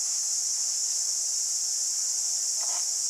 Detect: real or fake real